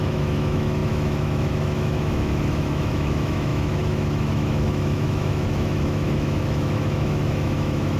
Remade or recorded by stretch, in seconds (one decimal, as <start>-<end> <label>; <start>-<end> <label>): 0.0-8.0 remade